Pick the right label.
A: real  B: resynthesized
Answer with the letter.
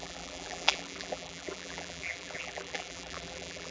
B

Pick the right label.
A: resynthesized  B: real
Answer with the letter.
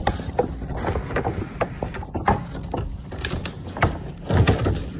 A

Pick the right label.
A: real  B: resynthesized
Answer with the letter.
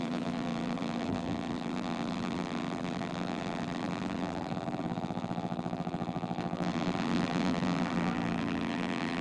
B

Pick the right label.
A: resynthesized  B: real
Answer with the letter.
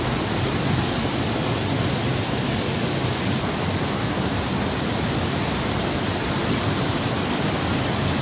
B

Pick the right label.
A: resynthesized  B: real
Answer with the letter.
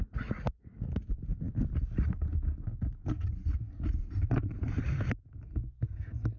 B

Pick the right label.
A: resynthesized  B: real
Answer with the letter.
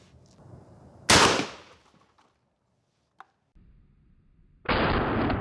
B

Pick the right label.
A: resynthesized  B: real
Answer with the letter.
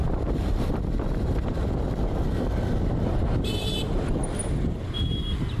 A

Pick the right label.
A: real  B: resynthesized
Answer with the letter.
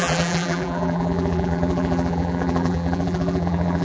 B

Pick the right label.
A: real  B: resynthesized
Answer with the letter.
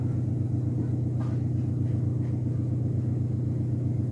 A